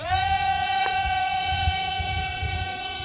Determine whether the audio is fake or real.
fake